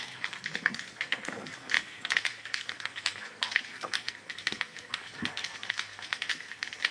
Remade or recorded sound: remade